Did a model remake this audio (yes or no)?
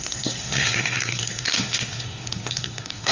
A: yes